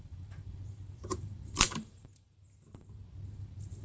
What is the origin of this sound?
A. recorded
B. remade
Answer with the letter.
B